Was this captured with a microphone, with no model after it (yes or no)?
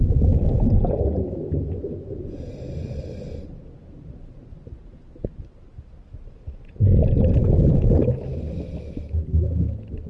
yes